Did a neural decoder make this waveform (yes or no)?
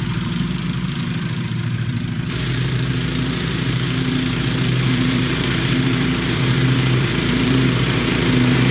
yes